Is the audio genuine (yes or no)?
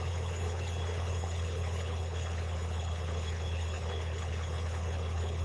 no